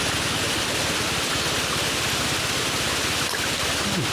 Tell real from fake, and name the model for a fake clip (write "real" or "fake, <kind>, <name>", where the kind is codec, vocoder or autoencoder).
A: real